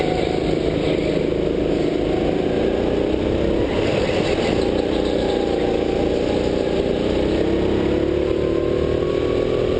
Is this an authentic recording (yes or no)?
yes